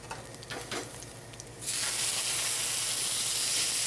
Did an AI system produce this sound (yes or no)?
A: no